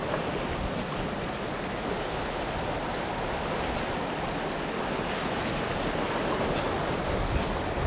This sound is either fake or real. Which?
real